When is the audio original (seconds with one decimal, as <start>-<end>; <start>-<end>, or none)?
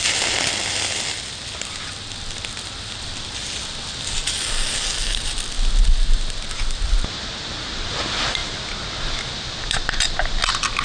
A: 0.0-10.8